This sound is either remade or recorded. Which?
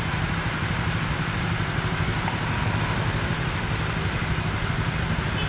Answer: recorded